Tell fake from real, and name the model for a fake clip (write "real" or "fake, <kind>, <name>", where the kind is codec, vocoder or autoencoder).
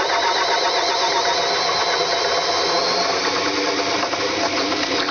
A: real